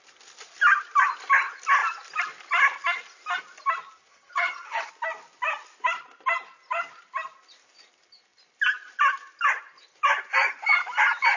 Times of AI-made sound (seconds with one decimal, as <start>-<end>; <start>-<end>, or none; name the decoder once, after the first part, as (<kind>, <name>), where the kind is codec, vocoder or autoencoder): 4.1-4.9 (vocoder, HiFi-GAN)